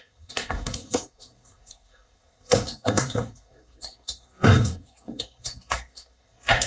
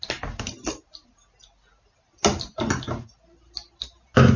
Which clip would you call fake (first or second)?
first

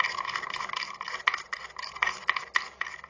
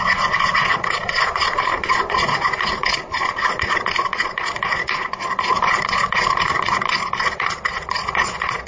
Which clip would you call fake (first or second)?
second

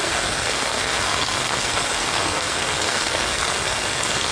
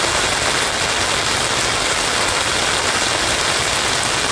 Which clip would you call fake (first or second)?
first